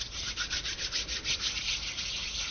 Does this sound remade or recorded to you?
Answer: recorded